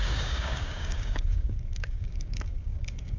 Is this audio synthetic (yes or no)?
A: yes